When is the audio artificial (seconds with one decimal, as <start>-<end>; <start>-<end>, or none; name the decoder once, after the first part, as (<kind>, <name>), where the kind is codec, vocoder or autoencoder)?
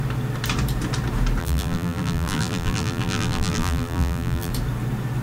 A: 1.4-4.5 (vocoder, BigVGAN v2)